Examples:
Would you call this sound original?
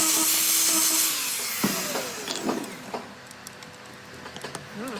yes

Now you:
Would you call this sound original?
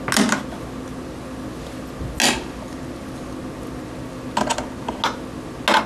yes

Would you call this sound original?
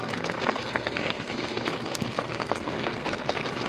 no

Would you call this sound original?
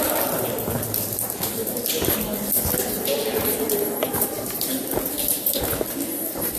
yes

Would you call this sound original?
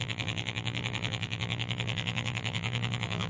no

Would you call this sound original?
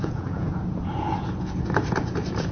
no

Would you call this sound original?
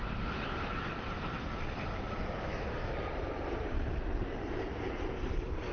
no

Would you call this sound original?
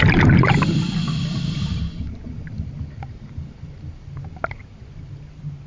yes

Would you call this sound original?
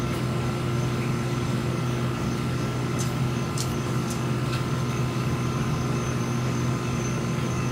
no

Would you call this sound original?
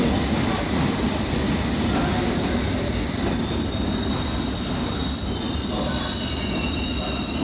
yes